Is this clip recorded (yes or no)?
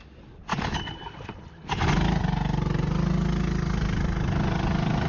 yes